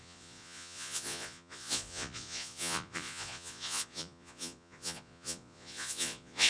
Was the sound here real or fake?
fake